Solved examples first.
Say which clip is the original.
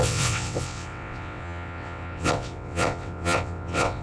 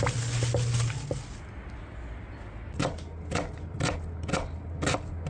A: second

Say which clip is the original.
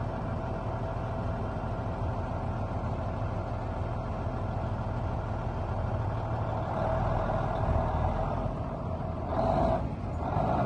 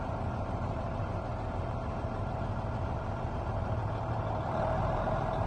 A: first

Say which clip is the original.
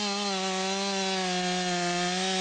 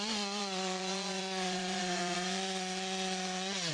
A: first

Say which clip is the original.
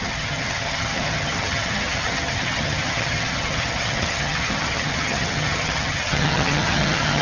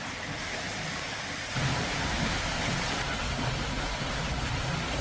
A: second